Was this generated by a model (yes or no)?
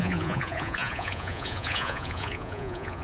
yes